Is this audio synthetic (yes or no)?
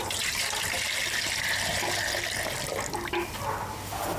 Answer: no